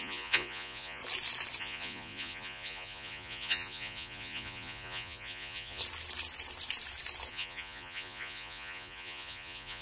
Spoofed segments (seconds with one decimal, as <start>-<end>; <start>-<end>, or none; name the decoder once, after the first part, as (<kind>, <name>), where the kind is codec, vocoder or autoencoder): 0.0-1.0 (vocoder, Vocos); 1.6-5.8; 7.3-9.8